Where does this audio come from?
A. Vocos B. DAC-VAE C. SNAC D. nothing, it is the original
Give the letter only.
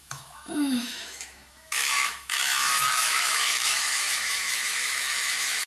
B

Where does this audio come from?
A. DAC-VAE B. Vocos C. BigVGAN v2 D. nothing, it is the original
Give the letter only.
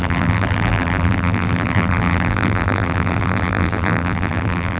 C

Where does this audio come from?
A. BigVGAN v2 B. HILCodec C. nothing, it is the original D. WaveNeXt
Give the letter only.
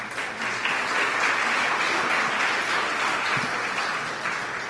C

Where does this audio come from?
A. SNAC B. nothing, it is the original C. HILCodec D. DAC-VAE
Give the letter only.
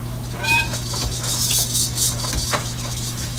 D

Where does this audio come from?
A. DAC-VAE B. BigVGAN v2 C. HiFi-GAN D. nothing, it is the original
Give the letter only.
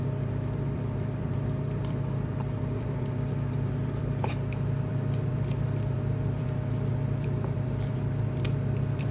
B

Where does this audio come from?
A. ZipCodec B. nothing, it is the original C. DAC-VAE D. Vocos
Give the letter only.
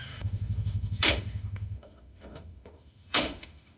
C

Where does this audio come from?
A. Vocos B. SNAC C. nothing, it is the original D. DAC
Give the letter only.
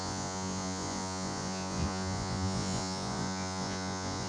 A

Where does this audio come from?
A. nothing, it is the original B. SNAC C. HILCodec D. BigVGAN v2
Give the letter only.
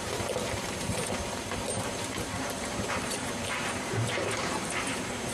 D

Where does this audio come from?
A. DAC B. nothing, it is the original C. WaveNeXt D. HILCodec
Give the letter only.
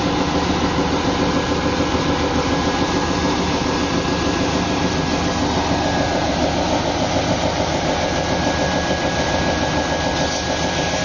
B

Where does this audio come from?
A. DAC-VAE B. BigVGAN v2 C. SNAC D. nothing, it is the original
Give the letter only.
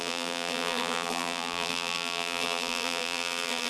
B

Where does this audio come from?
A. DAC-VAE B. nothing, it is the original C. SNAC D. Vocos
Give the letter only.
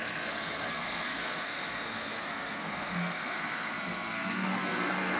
C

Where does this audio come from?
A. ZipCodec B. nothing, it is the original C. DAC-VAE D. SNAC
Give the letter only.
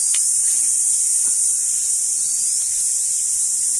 B